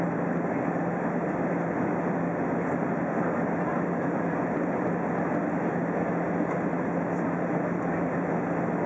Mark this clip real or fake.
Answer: real